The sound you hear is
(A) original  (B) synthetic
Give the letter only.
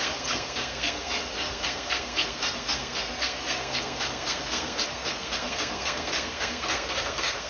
B